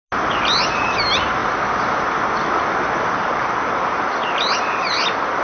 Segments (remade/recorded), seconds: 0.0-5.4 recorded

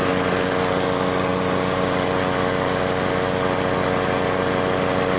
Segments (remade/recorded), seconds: 0.0-5.2 recorded

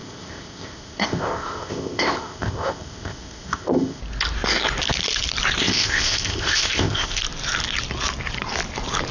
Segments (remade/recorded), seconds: 0.0-4.0 remade; 4.0-5.6 recorded; 5.6-7.2 remade; 7.2-9.1 recorded

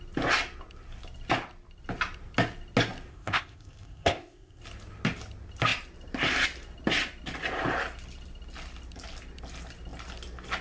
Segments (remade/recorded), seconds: 0.0-3.1 recorded; 3.1-4.6 remade; 4.6-10.6 recorded